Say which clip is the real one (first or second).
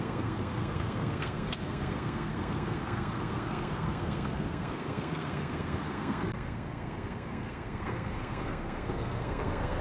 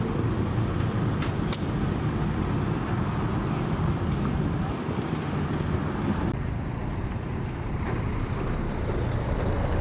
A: second